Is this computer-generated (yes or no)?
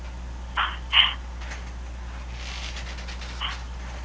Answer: no